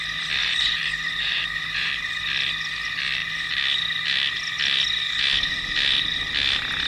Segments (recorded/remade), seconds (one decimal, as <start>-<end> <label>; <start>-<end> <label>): 0.0-0.4 recorded; 0.4-1.9 remade; 1.9-6.9 recorded